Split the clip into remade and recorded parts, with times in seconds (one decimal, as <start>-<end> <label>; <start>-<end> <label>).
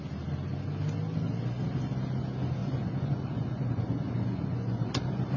0.0-2.6 recorded; 2.6-4.9 remade; 4.9-5.4 recorded